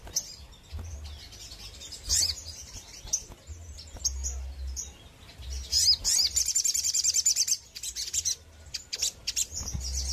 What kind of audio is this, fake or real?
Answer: real